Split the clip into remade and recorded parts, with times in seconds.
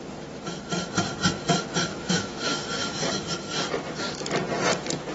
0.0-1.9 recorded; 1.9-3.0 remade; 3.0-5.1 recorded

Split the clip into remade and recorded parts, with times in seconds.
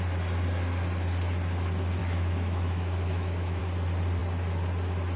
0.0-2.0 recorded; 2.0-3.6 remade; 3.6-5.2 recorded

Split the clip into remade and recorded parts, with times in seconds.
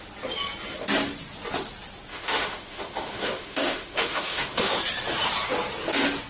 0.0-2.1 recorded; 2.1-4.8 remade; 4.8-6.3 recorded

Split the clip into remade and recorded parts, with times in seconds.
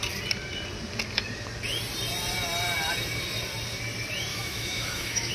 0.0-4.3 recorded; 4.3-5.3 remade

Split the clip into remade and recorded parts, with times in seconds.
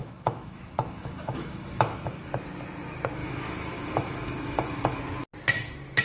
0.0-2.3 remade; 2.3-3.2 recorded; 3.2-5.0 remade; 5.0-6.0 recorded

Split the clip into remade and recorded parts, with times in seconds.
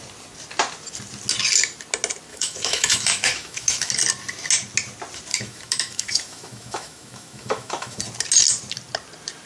0.0-2.3 recorded; 2.3-3.9 remade; 3.9-5.3 recorded; 5.3-8.0 remade; 8.0-9.5 recorded